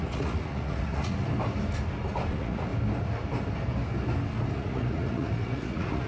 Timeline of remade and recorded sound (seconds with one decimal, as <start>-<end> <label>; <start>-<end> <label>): 0.0-1.3 remade; 1.3-2.3 recorded; 2.3-2.7 remade; 2.7-4.5 recorded; 4.5-6.1 remade